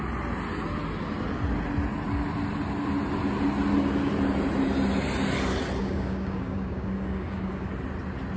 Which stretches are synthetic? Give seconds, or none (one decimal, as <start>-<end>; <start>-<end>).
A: 5.8-7.7